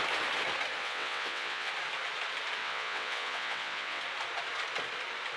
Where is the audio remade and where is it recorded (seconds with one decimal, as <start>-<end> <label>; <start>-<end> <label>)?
0.0-0.8 recorded; 0.8-1.7 remade; 1.7-2.6 recorded; 2.6-4.0 remade; 4.0-5.4 recorded